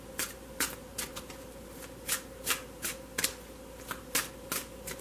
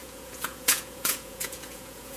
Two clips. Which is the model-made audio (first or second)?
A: second